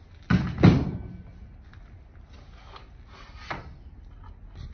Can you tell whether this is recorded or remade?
recorded